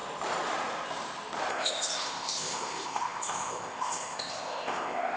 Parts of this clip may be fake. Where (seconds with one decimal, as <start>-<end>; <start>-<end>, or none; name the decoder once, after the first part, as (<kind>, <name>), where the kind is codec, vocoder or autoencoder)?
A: 1.5-5.2 (codec, ZipCodec)